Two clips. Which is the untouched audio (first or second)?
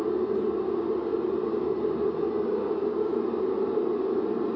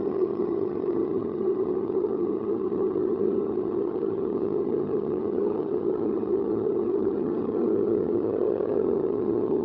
first